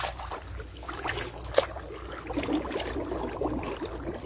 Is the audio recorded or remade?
recorded